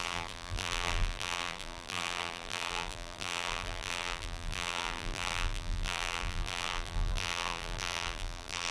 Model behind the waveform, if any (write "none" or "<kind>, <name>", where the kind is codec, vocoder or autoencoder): vocoder, BigVGAN v2